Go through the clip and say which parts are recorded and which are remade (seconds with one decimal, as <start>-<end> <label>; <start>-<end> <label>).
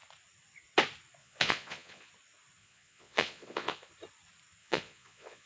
0.0-1.2 recorded; 1.2-2.1 remade; 2.1-2.6 recorded; 2.6-3.9 remade; 3.9-4.6 recorded; 4.6-5.5 remade